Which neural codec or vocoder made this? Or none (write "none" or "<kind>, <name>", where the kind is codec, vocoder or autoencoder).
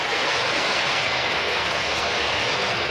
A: codec, SNAC